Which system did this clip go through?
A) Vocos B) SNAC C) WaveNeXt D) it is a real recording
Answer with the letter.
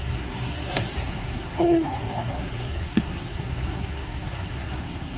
B